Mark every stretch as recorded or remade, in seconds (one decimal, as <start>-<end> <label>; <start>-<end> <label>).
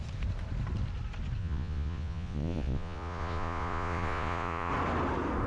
0.0-1.4 recorded; 1.4-4.7 remade; 4.7-5.5 recorded